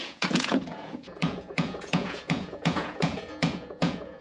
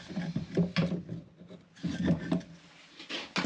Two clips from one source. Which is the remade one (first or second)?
first